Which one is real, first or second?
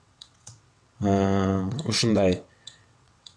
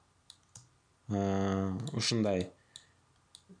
second